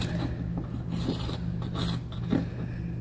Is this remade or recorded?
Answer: recorded